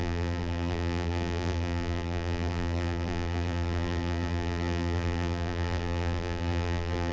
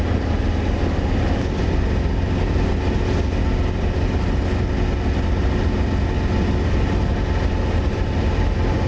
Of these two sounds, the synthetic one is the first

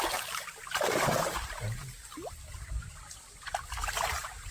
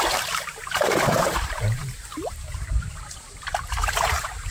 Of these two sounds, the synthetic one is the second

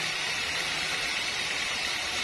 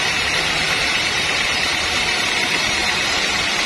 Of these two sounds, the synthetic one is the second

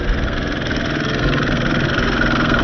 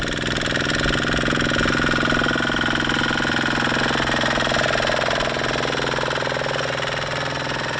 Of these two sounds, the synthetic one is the first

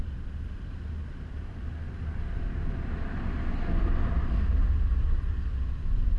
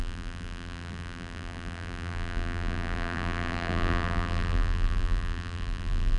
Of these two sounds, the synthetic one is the second